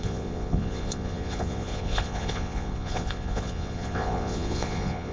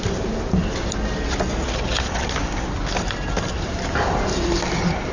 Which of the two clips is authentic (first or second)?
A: second